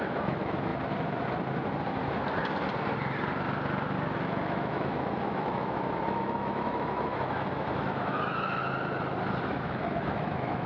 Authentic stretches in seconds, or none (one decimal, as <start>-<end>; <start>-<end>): 0.7-4.2; 8.6-9.4